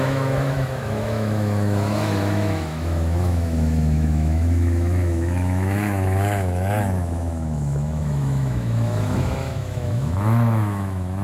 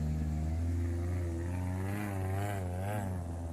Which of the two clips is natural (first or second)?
second